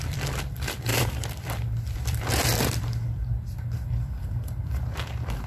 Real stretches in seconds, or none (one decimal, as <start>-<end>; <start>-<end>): none